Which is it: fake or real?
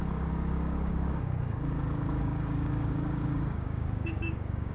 fake